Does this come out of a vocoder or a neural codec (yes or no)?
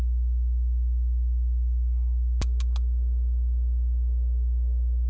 no